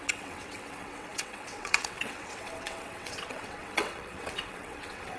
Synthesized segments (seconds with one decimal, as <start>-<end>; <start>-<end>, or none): 0.0-5.2